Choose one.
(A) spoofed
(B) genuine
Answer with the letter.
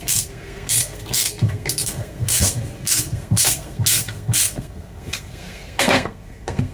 A